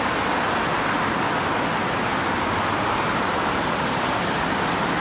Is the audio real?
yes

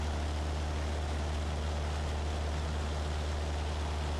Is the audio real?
yes